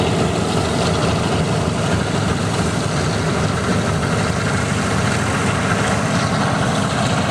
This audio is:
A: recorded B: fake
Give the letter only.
A